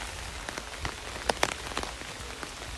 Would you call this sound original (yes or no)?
yes